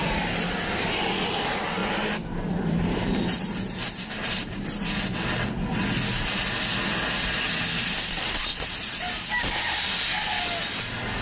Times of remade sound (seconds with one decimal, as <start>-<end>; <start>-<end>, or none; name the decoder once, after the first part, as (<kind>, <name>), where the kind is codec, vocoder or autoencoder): 1.8-3.9 (vocoder, BigVGAN v2)